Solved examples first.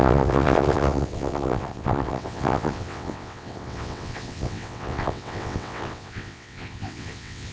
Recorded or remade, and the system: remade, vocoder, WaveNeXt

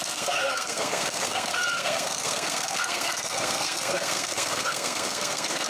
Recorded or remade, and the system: remade, codec, SNAC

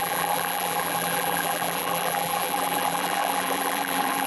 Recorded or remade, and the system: remade, vocoder, BigVGAN v2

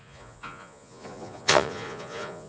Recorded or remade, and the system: remade, vocoder, Vocos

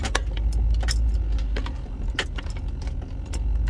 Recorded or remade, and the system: recorded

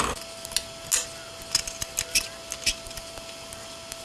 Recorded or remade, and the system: recorded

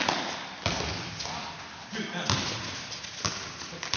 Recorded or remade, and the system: recorded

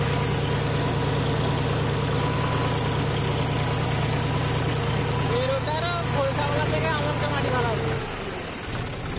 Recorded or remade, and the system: recorded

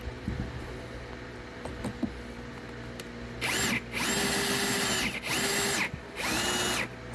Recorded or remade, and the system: recorded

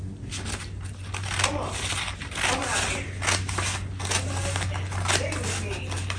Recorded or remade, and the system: recorded